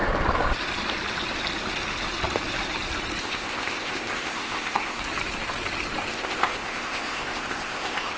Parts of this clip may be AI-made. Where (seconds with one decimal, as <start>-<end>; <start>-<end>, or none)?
3.2-5.0; 6.1-8.2